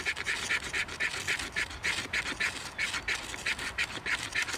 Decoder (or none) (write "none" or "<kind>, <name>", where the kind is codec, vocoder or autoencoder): none